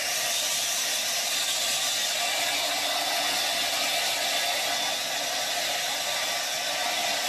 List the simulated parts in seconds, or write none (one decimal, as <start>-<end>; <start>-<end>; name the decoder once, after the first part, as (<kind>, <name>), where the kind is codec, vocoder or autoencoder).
0.0-2.0 (vocoder, BigVGAN v2); 6.0-7.3